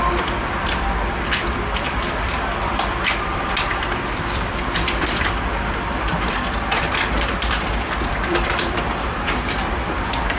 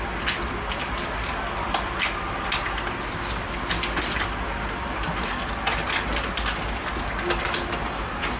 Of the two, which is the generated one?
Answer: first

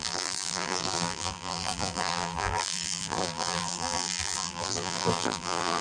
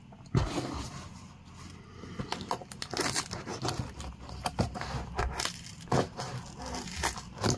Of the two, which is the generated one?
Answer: first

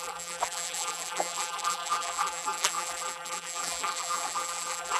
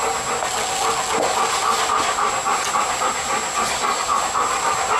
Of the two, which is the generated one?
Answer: first